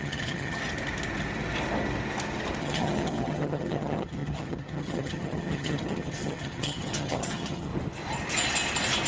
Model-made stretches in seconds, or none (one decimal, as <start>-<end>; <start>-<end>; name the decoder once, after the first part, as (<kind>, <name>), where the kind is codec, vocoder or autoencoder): 0.0-0.6 (vocoder, HiFi-GAN); 2.6-7.7